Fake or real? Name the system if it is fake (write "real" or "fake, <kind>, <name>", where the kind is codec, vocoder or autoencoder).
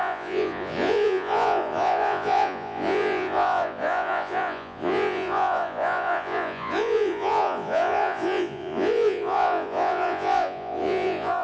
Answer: fake, vocoder, Vocos